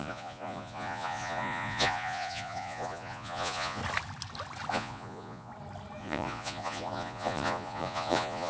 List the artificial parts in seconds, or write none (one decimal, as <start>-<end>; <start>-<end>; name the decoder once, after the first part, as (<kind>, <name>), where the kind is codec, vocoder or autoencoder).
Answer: 0.0-3.8 (vocoder, Vocos); 4.7-5.5; 6.0-8.5